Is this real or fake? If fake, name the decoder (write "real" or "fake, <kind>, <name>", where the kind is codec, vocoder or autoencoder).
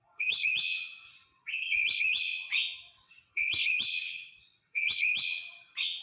fake, vocoder, WaveNeXt